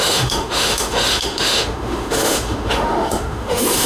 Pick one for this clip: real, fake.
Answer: fake